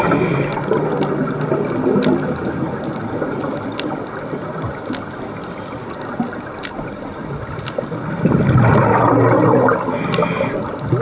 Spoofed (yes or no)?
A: no